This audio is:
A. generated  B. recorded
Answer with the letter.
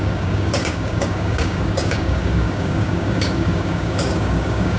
A